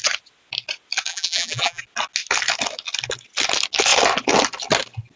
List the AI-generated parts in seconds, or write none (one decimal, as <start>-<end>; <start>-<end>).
1.1-1.8